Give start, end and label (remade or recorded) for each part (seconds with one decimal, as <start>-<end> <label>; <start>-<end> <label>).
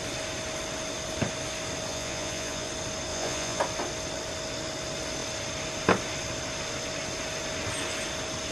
0.0-1.9 recorded; 1.9-2.7 remade; 2.7-3.1 recorded; 3.1-3.6 remade; 3.6-8.5 recorded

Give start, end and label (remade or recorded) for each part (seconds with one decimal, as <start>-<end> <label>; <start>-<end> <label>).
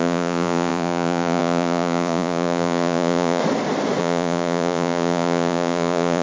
0.0-3.4 remade; 3.4-4.0 recorded; 4.0-6.2 remade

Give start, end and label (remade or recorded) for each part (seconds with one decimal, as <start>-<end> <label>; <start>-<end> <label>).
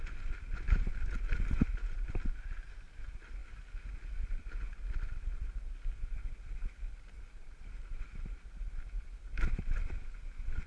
0.0-10.7 recorded